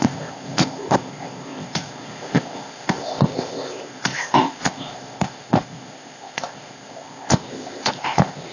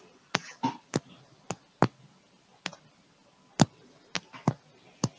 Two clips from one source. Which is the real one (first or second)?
second